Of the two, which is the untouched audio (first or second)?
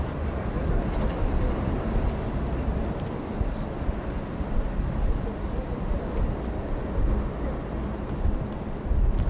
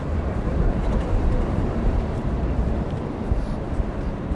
first